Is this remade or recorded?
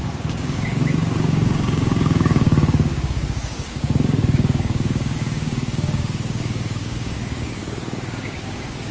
remade